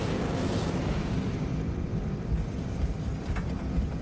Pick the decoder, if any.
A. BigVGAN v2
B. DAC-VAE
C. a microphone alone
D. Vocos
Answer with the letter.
A